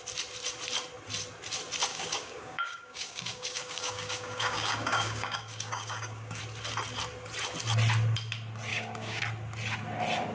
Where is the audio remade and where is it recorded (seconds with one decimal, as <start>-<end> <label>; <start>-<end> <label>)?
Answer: 0.0-1.9 recorded; 1.9-6.4 remade; 6.4-8.7 recorded; 8.7-9.2 remade; 9.2-10.3 recorded